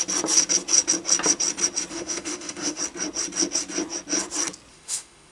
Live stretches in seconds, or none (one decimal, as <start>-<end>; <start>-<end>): 0.0-1.9; 2.8-4.7